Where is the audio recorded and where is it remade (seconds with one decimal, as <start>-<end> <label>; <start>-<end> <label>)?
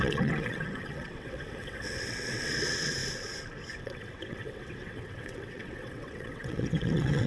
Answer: 0.0-3.0 remade; 3.0-3.8 recorded; 3.8-7.3 remade